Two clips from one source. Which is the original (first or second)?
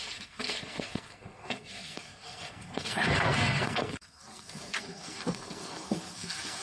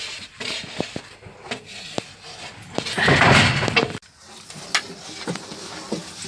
second